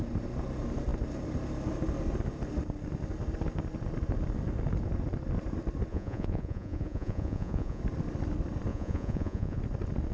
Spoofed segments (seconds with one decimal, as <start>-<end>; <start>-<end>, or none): 5.9-7.8; 8.7-9.6